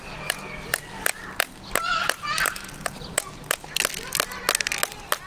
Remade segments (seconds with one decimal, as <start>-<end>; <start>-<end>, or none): none